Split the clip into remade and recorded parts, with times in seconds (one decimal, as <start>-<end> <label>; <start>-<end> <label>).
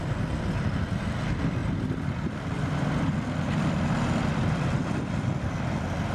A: 0.0-1.6 recorded; 1.6-5.3 remade; 5.3-6.1 recorded